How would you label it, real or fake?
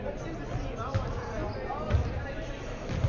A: real